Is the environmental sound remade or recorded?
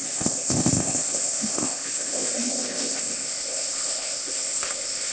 remade